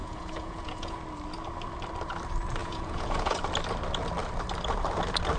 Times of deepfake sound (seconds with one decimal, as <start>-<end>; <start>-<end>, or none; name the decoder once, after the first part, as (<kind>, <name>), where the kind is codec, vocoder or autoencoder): 0.0-1.0 (vocoder, Vocos); 2.6-3.4